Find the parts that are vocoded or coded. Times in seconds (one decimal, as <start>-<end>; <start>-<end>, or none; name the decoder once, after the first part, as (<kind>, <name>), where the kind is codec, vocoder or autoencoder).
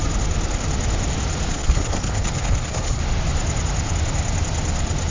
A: 1.5-3.0 (codec, HILCodec)